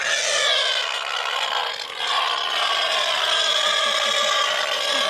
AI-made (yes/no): no